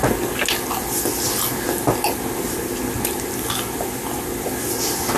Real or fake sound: real